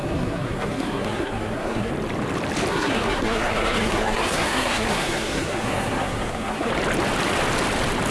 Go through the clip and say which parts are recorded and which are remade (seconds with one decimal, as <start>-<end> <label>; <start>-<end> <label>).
0.0-1.9 remade; 1.9-2.7 recorded; 2.7-6.7 remade; 6.7-8.1 recorded